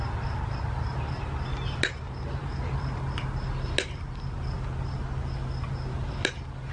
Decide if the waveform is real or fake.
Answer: real